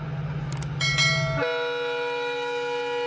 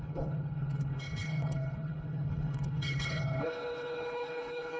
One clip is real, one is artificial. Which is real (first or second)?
first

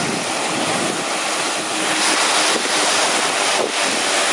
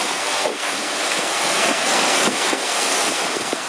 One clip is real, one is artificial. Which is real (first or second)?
first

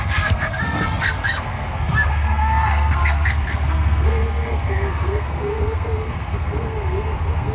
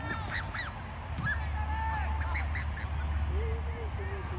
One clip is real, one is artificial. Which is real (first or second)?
second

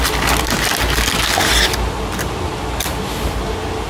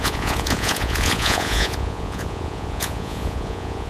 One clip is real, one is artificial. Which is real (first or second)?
first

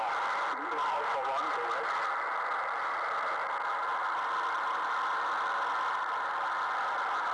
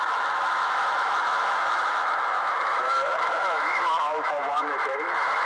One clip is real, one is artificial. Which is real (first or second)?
first